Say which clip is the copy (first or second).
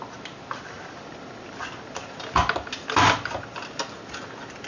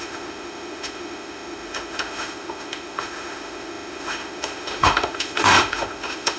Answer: second